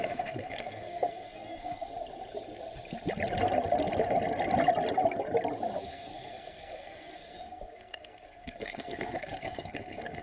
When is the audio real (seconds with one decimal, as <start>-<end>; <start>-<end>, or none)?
1.9-5.8